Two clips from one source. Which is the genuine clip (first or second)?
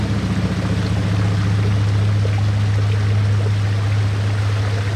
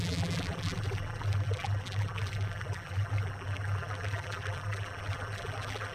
first